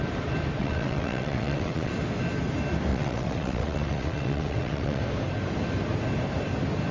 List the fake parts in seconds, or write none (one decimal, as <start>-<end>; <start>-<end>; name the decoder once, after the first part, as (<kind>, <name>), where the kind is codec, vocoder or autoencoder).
0.6-1.9 (vocoder, WaveNeXt); 2.9-5.0

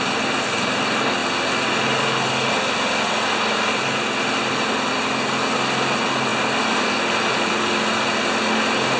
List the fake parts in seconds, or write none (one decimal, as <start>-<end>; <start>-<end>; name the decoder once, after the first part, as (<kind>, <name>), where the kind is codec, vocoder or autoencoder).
none

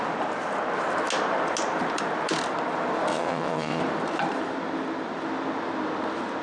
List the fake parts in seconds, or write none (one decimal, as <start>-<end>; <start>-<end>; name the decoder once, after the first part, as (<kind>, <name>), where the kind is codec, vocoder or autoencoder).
3.1-3.8 (vocoder, WaveNeXt)

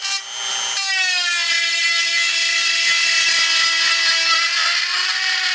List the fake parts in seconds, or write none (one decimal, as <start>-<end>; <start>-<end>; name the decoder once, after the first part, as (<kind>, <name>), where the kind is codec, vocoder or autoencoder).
none